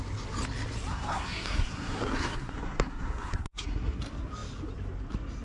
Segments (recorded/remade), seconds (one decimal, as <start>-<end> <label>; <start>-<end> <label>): 0.0-0.9 recorded; 0.9-4.0 remade; 4.0-5.4 recorded